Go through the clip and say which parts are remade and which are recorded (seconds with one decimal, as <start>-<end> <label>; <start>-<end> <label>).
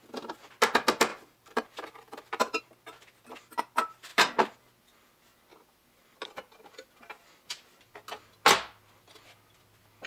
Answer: 0.0-1.1 recorded; 1.1-2.6 remade; 2.6-4.1 recorded; 4.1-4.6 remade; 4.6-10.1 recorded